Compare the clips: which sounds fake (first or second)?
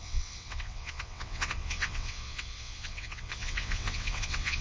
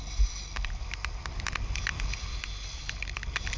first